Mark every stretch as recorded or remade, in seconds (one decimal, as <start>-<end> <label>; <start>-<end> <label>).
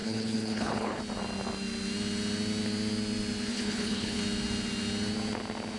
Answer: 0.0-1.0 remade; 1.0-3.5 recorded; 3.5-4.2 remade; 4.2-5.8 recorded